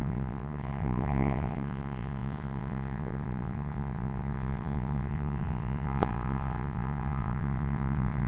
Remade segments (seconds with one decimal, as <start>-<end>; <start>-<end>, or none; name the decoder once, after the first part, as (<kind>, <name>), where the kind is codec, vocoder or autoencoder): 0.0-8.3 (vocoder, WaveNeXt)